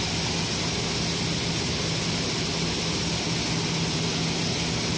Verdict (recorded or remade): recorded